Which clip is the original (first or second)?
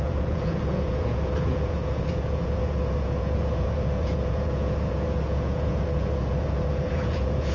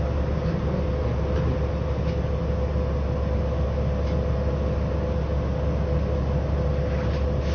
second